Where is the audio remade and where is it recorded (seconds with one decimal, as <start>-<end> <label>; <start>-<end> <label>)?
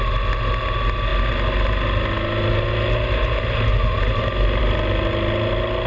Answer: 0.0-5.9 recorded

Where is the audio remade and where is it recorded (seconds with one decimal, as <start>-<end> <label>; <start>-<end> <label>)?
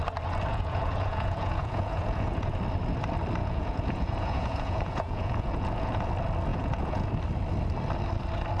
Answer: 0.0-0.5 recorded; 0.5-2.6 remade; 2.6-3.4 recorded; 3.4-6.1 remade; 6.1-6.5 recorded; 6.5-7.1 remade; 7.1-8.6 recorded